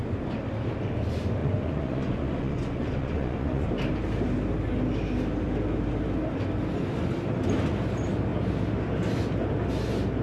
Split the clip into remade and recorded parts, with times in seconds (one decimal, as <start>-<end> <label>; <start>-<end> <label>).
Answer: 0.0-1.4 recorded; 1.4-3.7 remade; 3.7-10.2 recorded